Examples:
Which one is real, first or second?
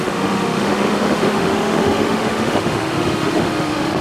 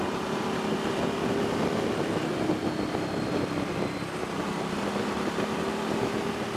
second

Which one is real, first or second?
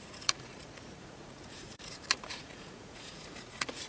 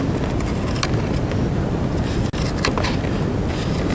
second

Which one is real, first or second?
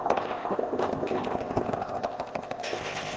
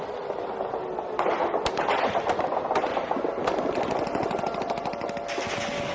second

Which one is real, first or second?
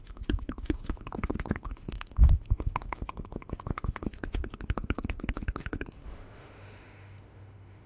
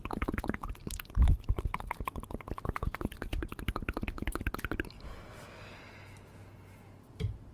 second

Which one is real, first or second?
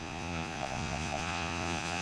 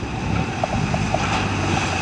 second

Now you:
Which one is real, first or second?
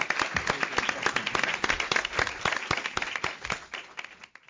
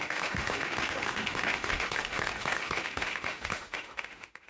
first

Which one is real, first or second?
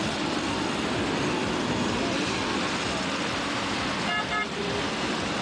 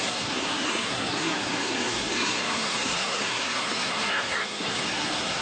first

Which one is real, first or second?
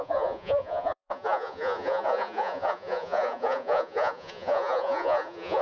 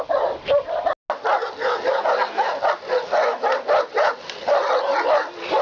second